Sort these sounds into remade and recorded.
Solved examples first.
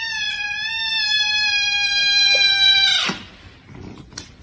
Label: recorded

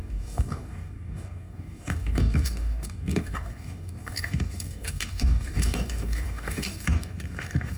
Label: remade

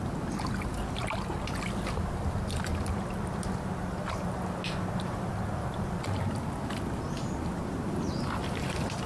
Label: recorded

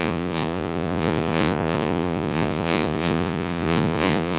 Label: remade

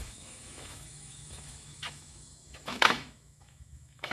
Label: remade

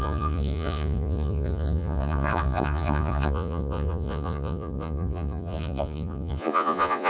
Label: remade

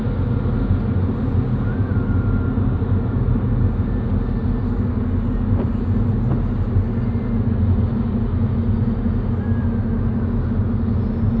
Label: recorded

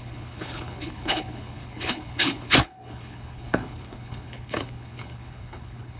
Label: remade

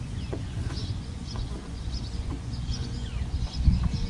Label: remade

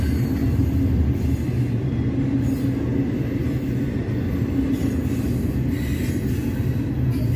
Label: recorded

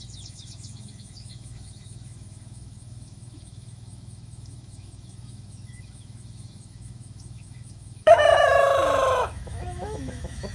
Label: remade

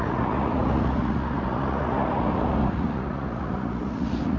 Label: remade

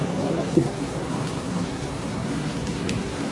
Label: remade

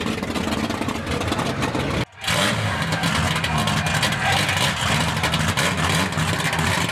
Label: recorded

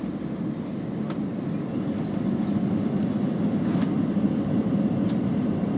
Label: recorded